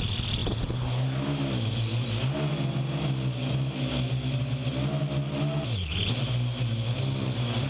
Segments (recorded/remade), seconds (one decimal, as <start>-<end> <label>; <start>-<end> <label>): 0.0-7.7 recorded